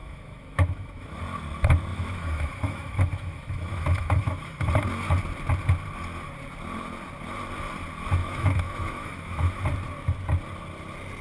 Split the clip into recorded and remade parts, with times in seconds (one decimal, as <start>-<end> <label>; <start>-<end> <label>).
0.0-1.2 remade; 1.2-1.9 recorded; 1.9-4.7 remade; 4.7-8.2 recorded; 8.2-9.6 remade; 9.6-11.2 recorded